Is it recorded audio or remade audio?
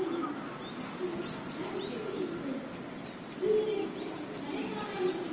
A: recorded